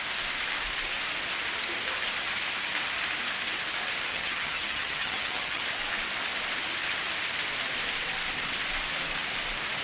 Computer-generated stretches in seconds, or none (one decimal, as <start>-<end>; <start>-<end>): 4.1-5.6